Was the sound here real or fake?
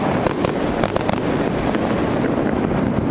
real